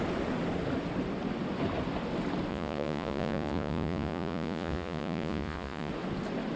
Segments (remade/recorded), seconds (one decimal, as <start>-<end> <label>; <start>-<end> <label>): 0.0-2.5 recorded; 2.5-5.9 remade; 5.9-6.6 recorded